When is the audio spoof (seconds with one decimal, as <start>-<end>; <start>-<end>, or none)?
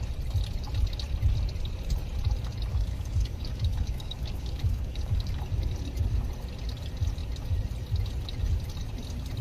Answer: 2.7-5.4